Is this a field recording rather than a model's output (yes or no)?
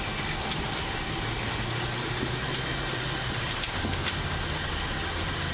yes